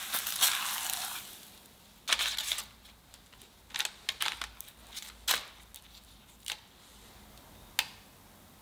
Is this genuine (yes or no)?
yes